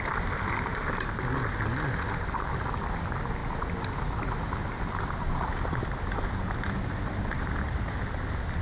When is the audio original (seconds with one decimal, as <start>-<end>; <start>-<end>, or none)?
0.0-8.6